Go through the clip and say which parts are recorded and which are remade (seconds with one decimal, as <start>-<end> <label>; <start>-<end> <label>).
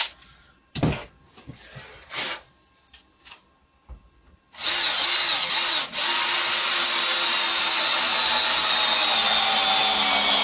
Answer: 0.0-10.4 recorded